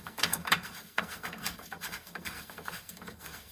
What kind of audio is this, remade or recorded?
remade